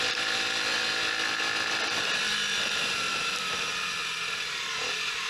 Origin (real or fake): real